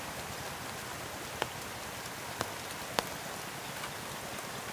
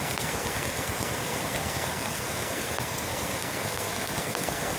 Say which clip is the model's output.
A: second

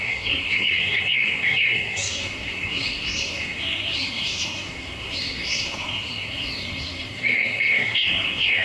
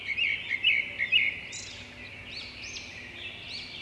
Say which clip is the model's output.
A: first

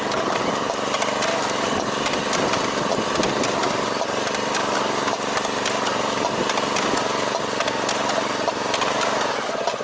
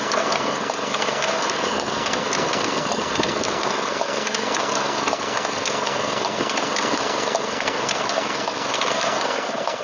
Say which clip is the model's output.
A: second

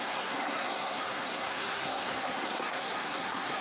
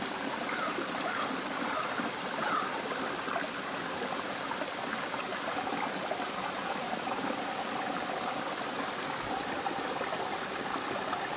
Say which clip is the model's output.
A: first